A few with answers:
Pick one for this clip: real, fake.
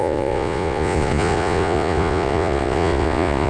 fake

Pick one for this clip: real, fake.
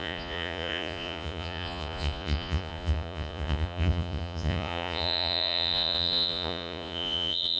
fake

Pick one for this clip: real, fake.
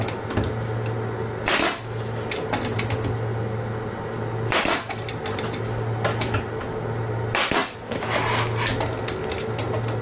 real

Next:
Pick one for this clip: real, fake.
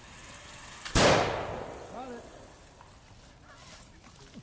real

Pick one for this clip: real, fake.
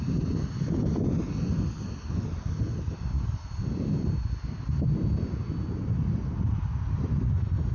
real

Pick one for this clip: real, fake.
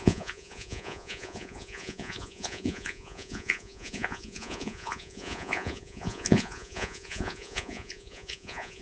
fake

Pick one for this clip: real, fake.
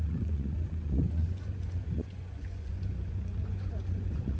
fake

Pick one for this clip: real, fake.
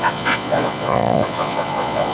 fake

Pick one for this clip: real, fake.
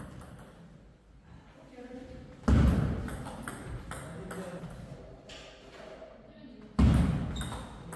real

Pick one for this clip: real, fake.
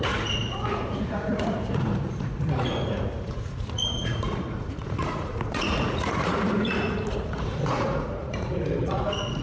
fake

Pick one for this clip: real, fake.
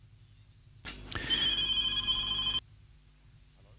real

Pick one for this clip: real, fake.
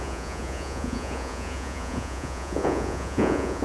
fake